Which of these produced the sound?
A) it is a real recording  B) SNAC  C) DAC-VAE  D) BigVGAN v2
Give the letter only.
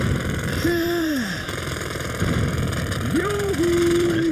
D